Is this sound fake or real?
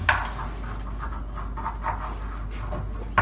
real